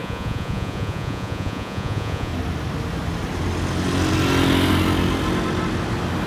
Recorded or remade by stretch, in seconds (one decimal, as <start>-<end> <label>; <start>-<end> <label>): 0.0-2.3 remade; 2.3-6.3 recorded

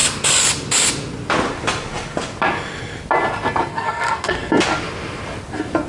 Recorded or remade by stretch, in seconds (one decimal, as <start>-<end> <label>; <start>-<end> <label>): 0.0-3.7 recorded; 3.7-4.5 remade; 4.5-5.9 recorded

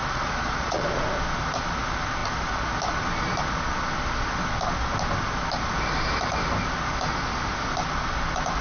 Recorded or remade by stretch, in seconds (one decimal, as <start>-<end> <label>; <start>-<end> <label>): 0.0-1.0 remade; 1.0-8.6 recorded

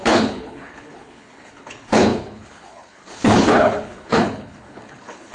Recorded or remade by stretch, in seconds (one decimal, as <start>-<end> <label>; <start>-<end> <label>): 0.0-5.3 remade

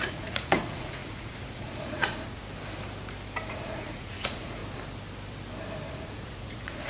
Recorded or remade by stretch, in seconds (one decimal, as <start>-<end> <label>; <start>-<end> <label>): 0.0-2.4 remade; 2.4-3.5 recorded; 3.5-4.6 remade; 4.6-5.9 recorded; 5.9-6.9 remade

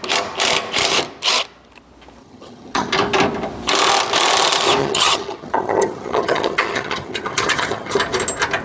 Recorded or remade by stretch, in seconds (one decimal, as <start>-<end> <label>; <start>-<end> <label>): 0.0-2.2 recorded; 2.2-2.9 remade; 2.9-4.8 recorded; 4.8-8.0 remade; 8.0-8.6 recorded